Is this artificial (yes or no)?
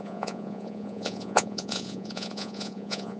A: yes